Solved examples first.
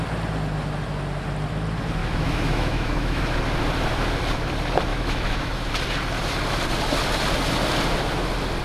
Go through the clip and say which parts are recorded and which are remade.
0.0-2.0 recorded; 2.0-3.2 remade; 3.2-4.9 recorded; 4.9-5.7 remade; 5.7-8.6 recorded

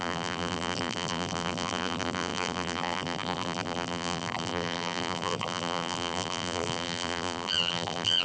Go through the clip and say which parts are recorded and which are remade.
0.0-8.2 remade

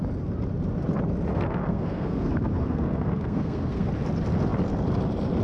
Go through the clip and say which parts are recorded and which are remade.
0.0-1.3 recorded; 1.3-3.9 remade; 3.9-5.4 recorded

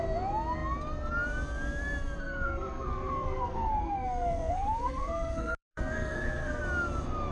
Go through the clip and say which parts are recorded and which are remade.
0.0-2.2 recorded; 2.2-6.6 remade; 6.6-7.3 recorded

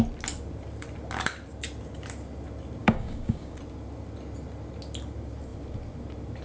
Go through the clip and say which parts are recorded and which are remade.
0.0-2.8 recorded; 2.8-3.6 remade; 3.6-6.4 recorded